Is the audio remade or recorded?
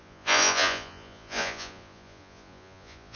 remade